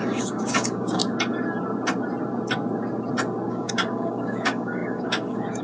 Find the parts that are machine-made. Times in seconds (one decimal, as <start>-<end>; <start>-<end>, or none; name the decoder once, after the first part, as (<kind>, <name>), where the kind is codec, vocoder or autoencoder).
0.0-1.0 (codec, DAC); 3.5-5.6